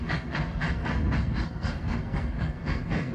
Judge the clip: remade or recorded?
remade